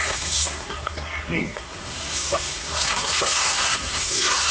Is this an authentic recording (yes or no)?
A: no